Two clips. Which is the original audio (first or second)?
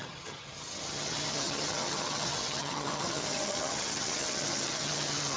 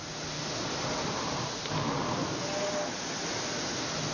second